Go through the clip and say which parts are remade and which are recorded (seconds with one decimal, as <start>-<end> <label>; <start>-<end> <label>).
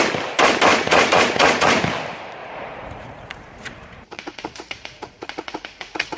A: 0.0-0.7 recorded; 0.7-1.8 remade; 1.8-2.4 recorded; 2.4-6.2 remade